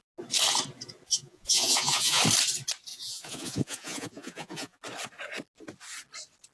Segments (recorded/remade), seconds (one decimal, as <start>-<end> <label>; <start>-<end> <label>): 0.0-1.1 recorded; 1.1-2.2 remade; 2.2-2.9 recorded; 2.9-4.8 remade; 4.8-6.5 recorded